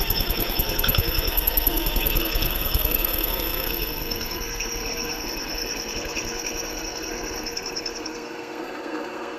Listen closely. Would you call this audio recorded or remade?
remade